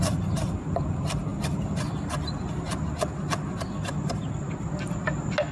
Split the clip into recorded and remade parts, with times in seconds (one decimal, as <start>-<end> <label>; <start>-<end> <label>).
0.0-5.5 recorded